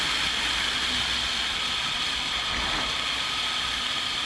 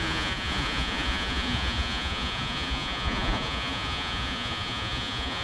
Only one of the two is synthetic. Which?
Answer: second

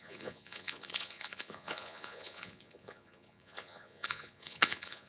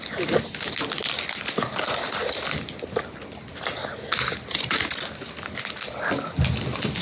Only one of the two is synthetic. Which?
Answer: first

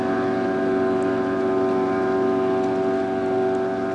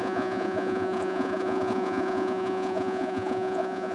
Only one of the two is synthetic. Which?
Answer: second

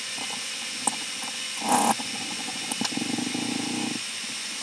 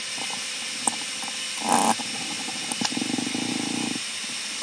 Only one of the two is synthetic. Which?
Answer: first